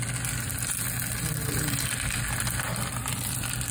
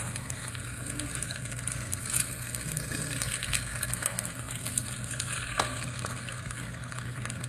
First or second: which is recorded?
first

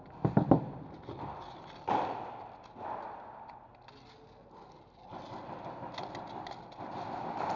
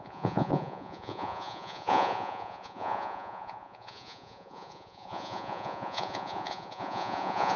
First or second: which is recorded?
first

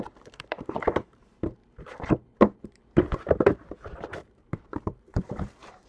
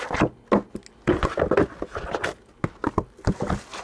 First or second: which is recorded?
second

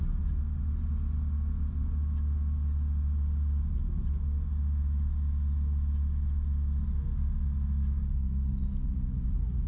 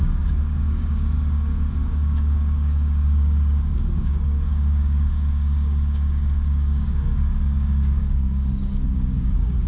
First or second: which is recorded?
first